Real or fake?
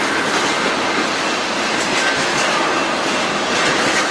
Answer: real